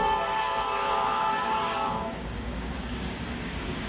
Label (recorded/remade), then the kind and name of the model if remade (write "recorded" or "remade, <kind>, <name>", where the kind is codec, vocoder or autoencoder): remade, codec, DAC